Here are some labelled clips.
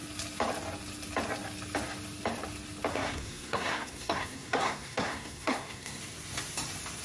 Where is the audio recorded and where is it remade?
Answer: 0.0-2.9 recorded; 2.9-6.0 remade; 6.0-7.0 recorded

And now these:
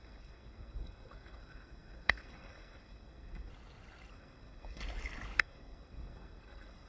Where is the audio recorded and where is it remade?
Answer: 0.0-3.5 remade; 3.5-4.1 recorded; 4.1-4.8 remade; 4.8-5.4 recorded; 5.4-6.9 remade

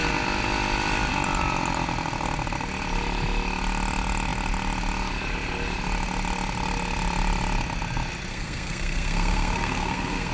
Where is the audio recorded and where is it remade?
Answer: 0.0-8.3 recorded; 8.3-10.3 remade

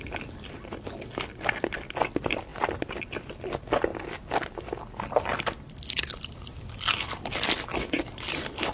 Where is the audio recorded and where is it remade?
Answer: 0.0-8.7 recorded

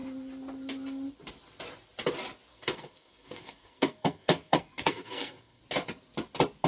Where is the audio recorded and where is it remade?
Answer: 0.0-2.5 recorded; 2.5-5.6 remade; 5.6-6.7 recorded